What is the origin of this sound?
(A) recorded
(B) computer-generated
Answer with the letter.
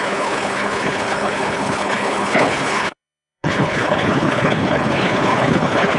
B